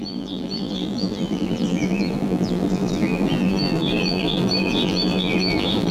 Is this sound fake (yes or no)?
yes